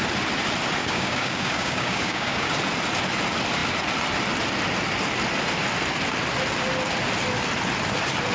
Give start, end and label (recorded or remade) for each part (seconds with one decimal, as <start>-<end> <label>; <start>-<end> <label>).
0.0-0.8 recorded; 0.8-2.5 remade; 2.5-8.3 recorded